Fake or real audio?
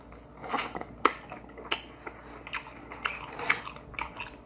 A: real